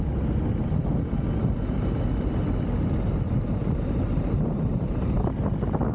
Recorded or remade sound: recorded